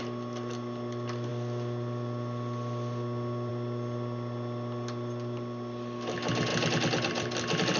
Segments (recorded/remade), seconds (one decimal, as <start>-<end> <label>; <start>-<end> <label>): 0.0-7.8 recorded